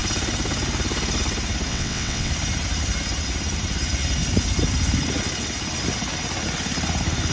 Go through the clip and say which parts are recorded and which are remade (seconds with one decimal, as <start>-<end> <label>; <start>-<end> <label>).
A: 0.0-1.7 recorded; 1.7-2.3 remade; 2.3-7.3 recorded